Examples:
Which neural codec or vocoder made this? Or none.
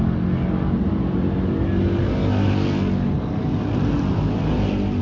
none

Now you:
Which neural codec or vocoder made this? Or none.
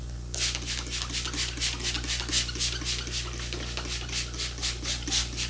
none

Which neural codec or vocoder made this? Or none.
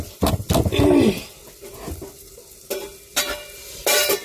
none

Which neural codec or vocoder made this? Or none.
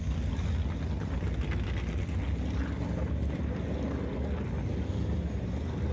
none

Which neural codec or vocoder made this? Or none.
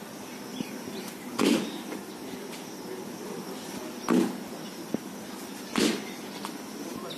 none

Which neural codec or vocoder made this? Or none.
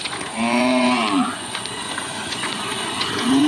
vocoder, Vocos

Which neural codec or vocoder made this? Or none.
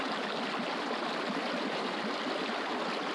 none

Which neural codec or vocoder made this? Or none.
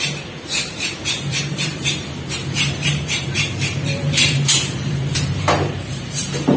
vocoder, BigVGAN v2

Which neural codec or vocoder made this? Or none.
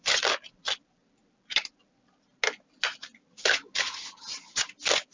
none